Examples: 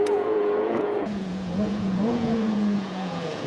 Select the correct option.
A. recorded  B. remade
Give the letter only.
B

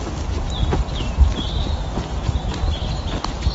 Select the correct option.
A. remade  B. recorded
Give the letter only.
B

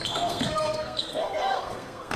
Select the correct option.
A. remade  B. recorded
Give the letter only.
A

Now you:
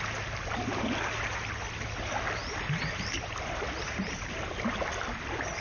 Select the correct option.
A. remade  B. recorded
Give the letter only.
B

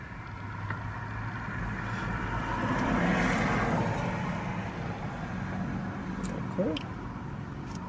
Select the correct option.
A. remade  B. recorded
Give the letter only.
B